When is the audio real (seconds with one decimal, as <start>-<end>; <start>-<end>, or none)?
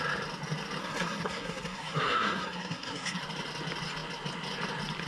0.0-0.8; 3.2-5.1